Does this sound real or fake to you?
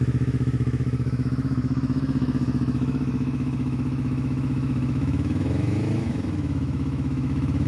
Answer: fake